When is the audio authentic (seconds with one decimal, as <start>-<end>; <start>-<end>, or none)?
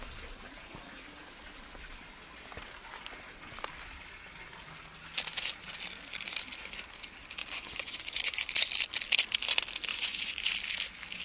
0.0-7.4; 8.7-9.9; 10.5-11.2